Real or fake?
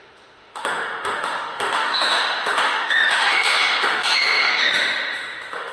fake